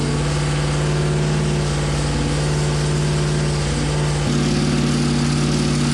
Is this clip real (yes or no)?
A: yes